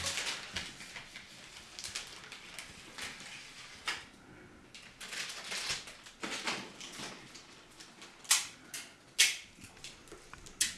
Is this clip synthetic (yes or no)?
no